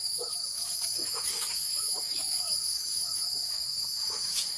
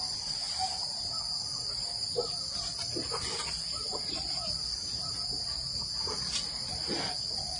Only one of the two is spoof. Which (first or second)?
first